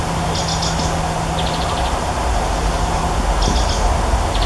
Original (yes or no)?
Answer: yes